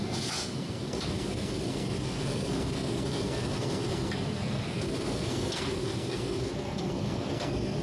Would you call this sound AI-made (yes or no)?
yes